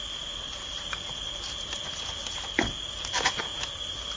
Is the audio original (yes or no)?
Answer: yes